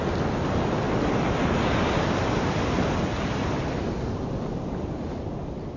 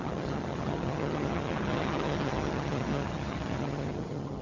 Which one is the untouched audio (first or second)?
first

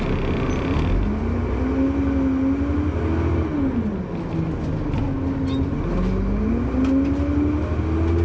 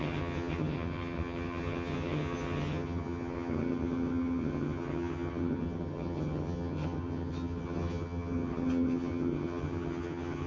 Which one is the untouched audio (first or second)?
first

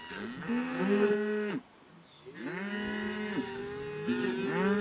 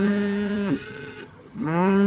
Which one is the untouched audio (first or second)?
first